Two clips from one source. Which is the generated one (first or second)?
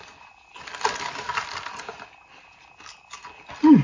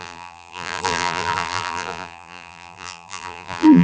second